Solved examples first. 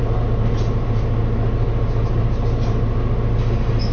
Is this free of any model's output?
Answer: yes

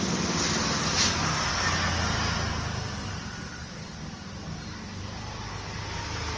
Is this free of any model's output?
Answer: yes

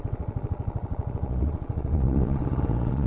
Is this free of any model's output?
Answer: no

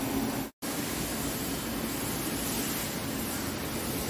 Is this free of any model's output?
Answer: yes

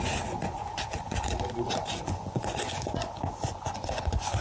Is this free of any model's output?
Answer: no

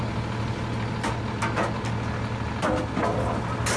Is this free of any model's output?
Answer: yes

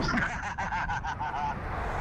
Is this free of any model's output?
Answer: yes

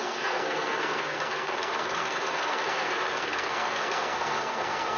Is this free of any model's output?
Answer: no